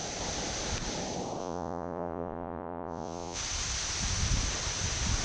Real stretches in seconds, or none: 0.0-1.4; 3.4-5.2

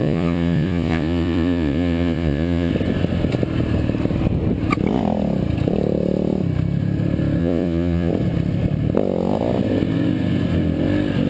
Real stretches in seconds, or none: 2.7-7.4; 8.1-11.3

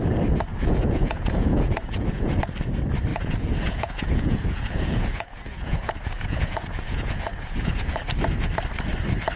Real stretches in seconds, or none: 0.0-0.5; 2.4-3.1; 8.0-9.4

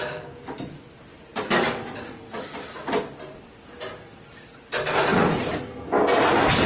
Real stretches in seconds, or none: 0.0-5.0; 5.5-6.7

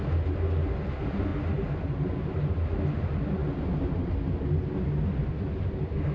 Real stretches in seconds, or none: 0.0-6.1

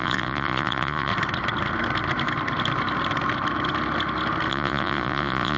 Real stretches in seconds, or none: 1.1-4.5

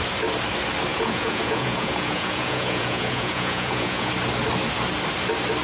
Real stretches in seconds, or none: 0.0-0.9; 4.1-5.6

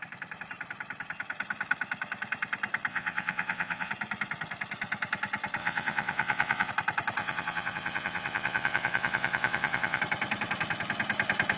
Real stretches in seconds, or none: 0.0-2.9; 3.9-5.6; 6.7-7.2; 10.0-11.6